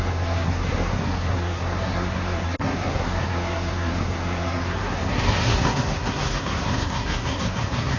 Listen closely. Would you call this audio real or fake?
fake